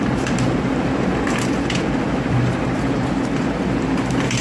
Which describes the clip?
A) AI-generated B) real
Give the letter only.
A